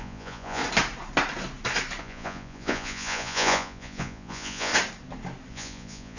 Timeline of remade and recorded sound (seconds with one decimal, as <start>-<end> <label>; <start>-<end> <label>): 0.0-0.6 remade; 0.6-2.0 recorded; 2.0-4.7 remade; 4.7-5.5 recorded; 5.5-6.2 remade